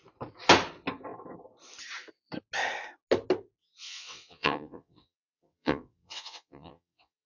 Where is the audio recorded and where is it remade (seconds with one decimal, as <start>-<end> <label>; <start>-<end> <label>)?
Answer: 0.0-3.6 recorded; 3.6-7.3 remade